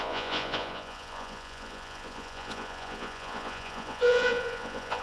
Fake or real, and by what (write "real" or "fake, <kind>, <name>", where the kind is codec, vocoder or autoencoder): fake, vocoder, Vocos